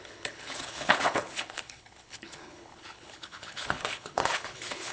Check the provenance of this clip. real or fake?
fake